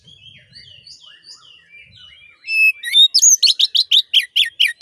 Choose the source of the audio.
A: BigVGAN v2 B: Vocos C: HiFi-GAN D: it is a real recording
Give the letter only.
D